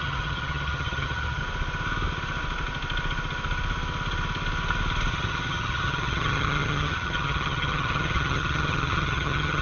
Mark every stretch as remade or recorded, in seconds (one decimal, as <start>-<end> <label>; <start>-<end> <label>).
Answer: 0.0-1.4 remade; 1.4-5.1 recorded; 5.1-9.6 remade